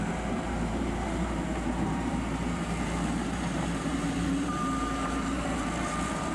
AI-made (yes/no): yes